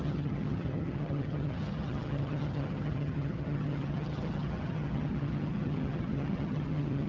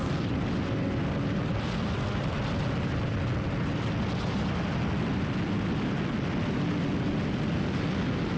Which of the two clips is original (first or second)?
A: second